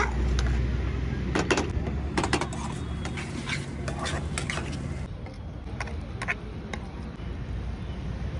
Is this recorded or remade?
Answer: recorded